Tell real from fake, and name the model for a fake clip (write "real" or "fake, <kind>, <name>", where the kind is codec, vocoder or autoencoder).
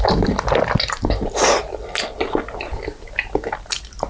real